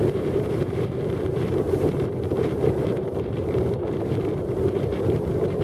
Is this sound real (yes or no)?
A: no